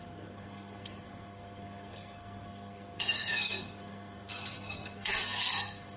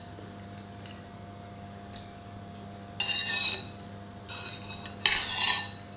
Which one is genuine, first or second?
second